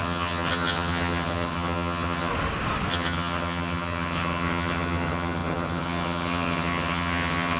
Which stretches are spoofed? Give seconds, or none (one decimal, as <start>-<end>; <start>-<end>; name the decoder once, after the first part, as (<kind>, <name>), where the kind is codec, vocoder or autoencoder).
0.0-2.3 (vocoder, HiFi-GAN); 2.9-7.6